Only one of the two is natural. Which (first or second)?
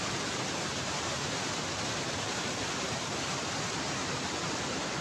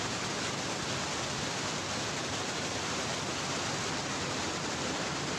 second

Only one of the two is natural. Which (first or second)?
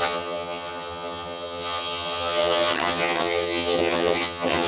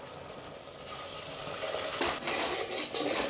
second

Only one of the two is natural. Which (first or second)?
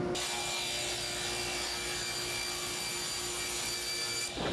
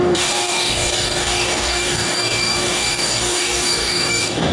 first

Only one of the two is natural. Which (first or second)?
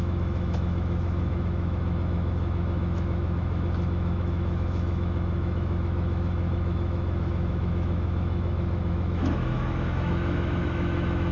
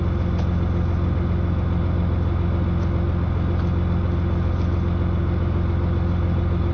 second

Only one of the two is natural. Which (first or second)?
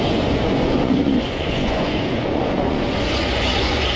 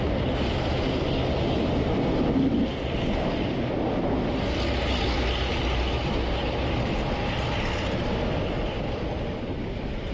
second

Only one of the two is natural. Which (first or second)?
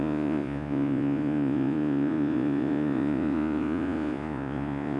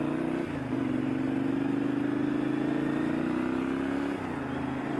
second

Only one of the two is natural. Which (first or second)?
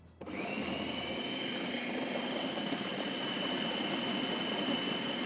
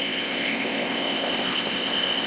first